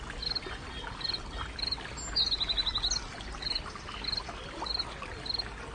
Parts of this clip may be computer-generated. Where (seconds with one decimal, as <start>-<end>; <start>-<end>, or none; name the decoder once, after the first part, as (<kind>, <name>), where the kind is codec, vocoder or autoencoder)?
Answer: none